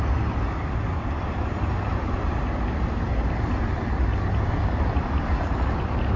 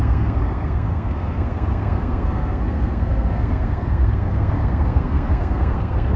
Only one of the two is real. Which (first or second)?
first